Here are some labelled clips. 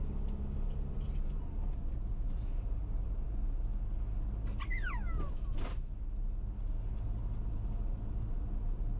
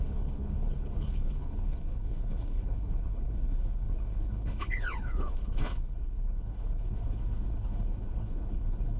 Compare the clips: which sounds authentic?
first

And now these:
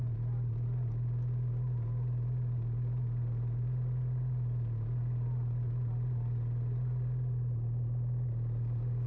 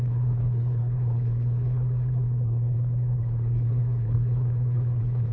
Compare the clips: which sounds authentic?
first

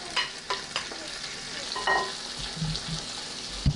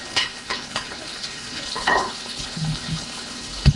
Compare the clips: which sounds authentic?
first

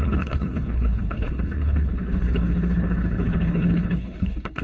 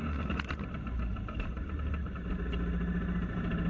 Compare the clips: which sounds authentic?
second